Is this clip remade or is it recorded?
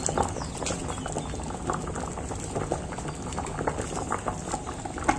recorded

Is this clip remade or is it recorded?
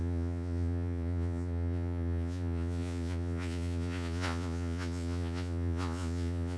remade